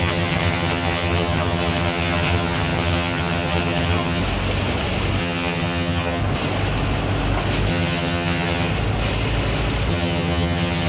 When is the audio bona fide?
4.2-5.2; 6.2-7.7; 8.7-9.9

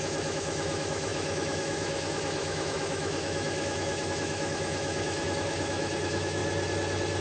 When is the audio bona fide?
6.4-7.2

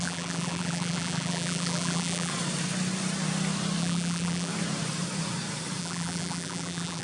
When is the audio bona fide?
2.3-3.8; 4.5-5.8

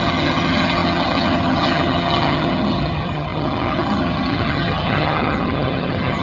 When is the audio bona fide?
none

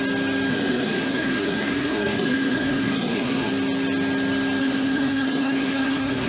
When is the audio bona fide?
0.0-0.5; 3.5-4.6

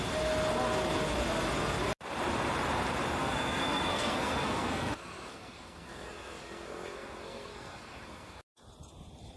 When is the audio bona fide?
0.0-3.2; 8.4-9.4

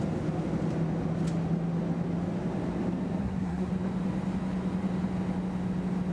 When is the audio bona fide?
0.0-3.2; 3.7-6.1

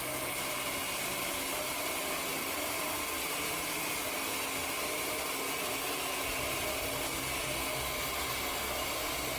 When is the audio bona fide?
0.0-9.4